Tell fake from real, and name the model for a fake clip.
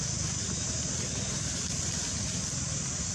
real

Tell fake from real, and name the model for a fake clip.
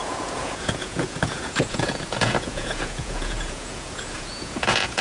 fake, vocoder, Vocos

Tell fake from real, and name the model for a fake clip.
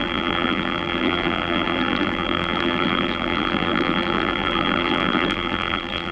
fake, vocoder, BigVGAN v2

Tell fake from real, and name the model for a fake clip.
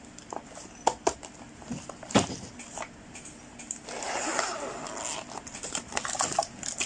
real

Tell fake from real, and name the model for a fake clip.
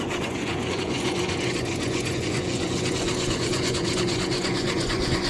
fake, vocoder, Vocos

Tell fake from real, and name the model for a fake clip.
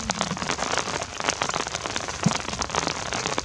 real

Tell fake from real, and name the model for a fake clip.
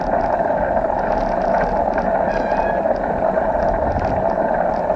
real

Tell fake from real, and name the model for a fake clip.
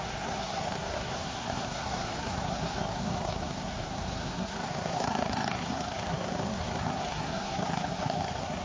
fake, codec, SNAC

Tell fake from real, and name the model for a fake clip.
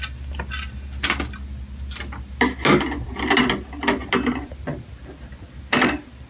real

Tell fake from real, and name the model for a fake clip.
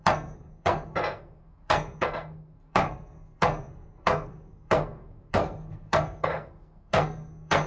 fake, codec, SNAC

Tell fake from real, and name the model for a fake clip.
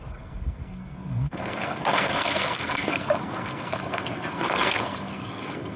fake, codec, SNAC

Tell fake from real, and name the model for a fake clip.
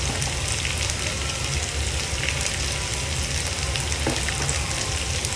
real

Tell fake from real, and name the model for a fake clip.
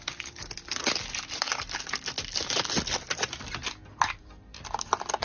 real